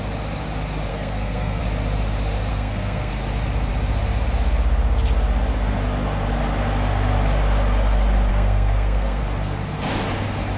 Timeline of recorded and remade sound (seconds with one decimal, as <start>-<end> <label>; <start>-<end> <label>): 0.0-0.9 recorded; 0.9-1.6 remade; 1.6-2.5 recorded; 2.5-3.1 remade; 3.1-8.3 recorded; 8.3-9.2 remade; 9.2-10.6 recorded